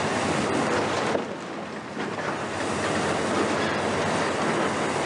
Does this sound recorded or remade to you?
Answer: recorded